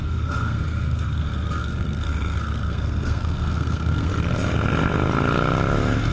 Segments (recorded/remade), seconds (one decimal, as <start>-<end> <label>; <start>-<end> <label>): 0.0-4.1 remade; 4.1-6.1 recorded